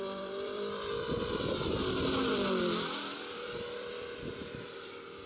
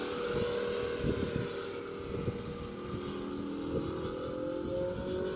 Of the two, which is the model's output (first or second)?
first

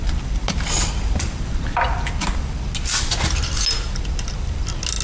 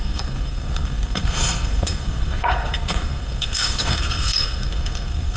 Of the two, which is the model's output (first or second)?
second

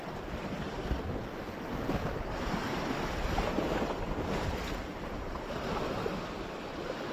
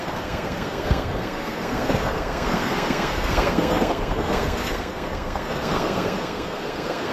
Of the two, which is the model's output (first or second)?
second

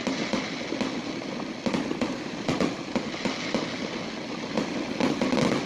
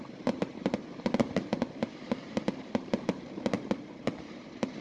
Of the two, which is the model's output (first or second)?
second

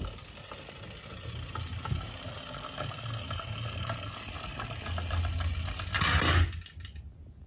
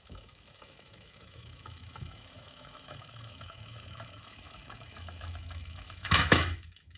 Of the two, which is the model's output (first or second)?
second